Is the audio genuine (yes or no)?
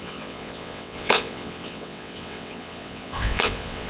no